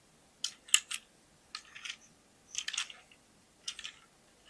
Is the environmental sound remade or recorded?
recorded